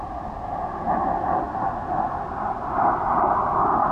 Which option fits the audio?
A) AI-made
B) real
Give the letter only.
B